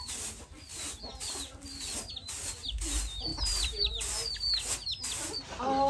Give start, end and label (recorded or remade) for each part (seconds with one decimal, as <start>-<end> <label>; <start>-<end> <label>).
0.0-3.3 recorded; 3.3-3.9 remade; 3.9-5.9 recorded